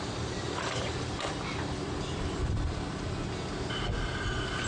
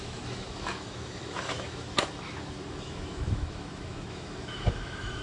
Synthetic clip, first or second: second